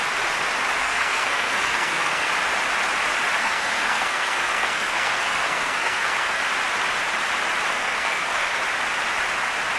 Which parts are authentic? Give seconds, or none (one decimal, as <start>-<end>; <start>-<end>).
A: 0.0-0.8; 2.3-3.4; 6.4-7.7; 8.6-9.8

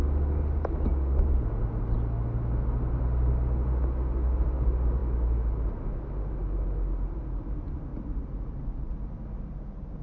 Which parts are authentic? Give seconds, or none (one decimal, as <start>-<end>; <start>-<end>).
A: 0.0-10.0

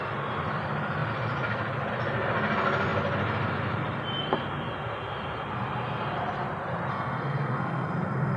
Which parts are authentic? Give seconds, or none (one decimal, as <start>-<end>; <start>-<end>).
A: 0.0-6.9

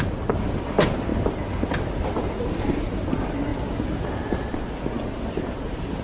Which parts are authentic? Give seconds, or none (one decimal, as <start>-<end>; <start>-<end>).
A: 3.5-4.9

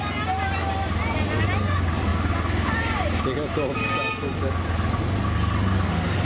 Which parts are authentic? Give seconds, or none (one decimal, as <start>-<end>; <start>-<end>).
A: 0.0-6.2